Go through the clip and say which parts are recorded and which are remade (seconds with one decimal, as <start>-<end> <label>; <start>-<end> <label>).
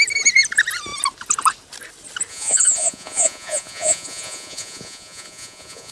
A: 0.0-2.3 recorded; 2.3-5.9 remade